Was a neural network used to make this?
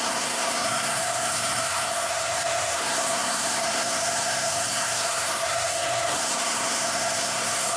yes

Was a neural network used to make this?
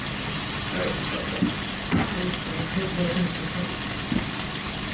no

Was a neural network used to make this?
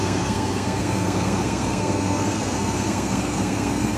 yes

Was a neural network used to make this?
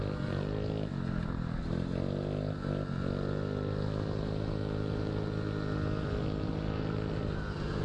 no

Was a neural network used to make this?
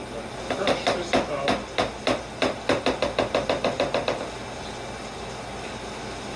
no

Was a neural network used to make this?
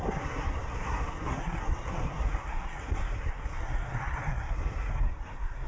yes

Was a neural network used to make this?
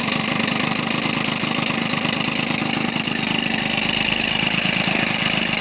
no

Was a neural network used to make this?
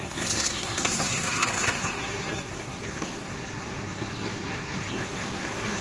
yes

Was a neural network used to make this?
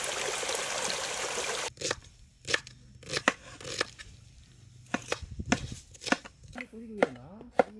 no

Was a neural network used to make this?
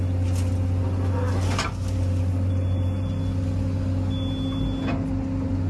no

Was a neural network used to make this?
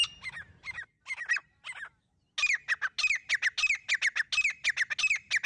no